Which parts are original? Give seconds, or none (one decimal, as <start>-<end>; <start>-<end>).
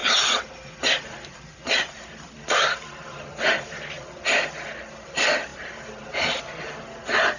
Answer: 4.4-5.5; 6.4-7.4